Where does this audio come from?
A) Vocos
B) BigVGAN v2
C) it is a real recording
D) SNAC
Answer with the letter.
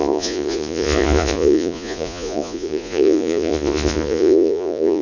A